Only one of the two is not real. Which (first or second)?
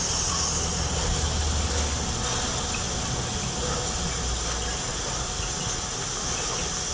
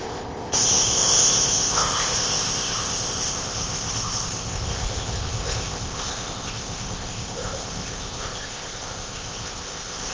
second